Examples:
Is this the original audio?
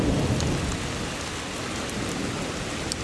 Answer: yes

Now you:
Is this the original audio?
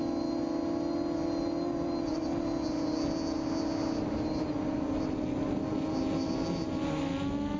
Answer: yes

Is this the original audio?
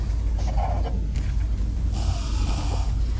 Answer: yes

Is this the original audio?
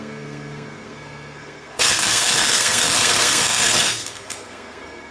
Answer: no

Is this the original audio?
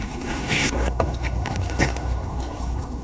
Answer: no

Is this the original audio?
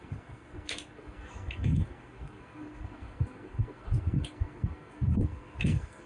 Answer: no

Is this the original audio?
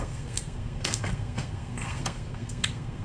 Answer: no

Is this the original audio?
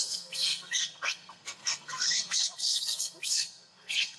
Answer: no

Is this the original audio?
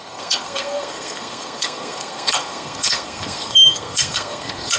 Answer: no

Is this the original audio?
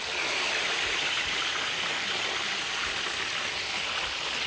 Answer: yes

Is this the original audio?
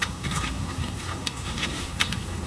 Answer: no